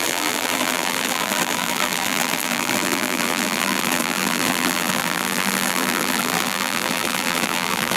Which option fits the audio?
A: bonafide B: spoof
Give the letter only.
B